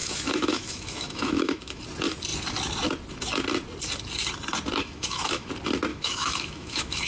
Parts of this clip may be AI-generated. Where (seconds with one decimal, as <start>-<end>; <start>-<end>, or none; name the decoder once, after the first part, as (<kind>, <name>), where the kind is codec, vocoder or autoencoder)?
0.0-1.8 (autoencoder, DAC-VAE); 4.8-5.5; 5.9-7.1